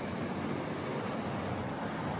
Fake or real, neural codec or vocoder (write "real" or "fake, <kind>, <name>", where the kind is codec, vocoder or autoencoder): real